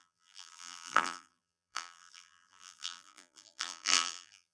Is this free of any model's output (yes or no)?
no